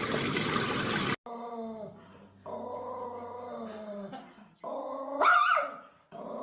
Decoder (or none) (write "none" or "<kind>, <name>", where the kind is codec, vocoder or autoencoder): none